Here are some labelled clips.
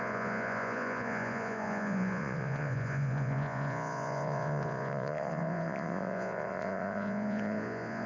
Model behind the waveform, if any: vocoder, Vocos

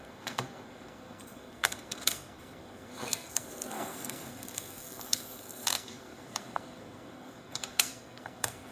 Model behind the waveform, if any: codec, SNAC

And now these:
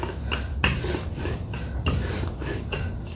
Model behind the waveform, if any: none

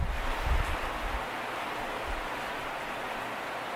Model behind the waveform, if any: none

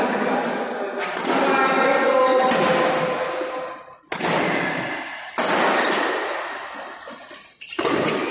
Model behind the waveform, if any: none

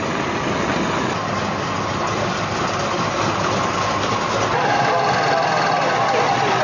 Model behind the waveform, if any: none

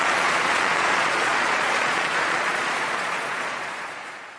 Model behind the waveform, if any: vocoder, Vocos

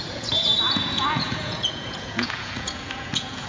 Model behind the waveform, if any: vocoder, Vocos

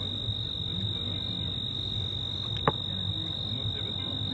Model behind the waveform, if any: none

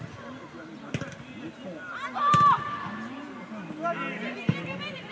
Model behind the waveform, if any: none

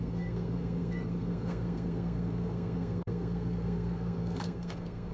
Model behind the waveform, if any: codec, SNAC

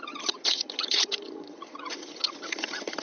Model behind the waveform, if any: vocoder, HiFi-GAN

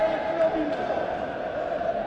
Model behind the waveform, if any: none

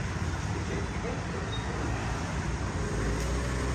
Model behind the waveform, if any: none